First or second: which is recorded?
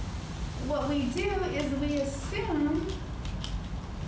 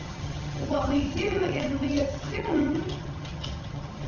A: first